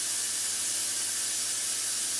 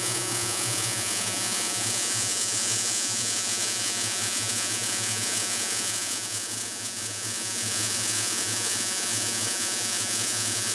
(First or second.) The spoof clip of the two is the second